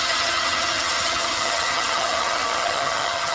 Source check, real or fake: fake